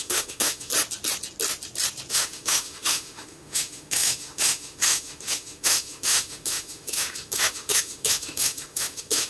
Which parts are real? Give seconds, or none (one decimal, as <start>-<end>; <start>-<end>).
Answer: 0.7-2.1